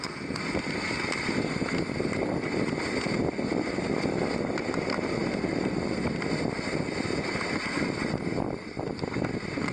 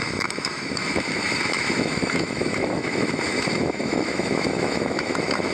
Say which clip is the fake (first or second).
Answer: second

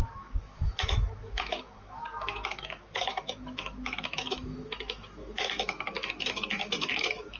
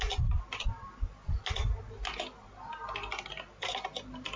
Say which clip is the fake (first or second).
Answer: first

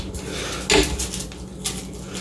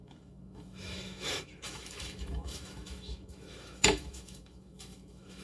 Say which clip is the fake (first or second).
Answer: second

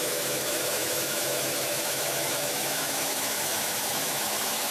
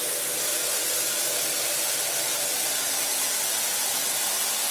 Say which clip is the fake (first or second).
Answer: first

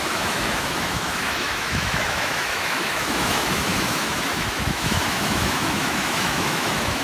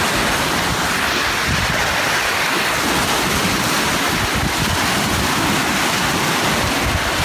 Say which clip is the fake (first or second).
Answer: first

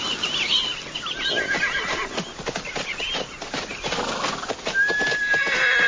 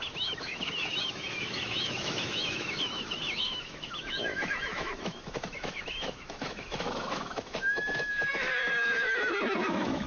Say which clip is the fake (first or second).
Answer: second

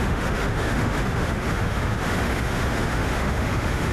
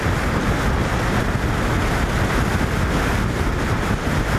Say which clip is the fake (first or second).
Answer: first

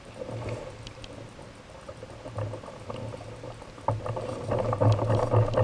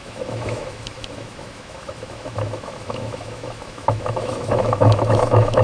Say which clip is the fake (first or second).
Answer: second